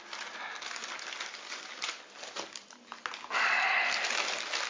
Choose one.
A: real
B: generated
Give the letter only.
A